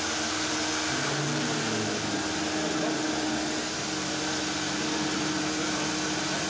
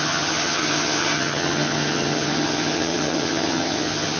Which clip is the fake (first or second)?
second